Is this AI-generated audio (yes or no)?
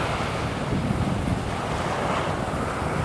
no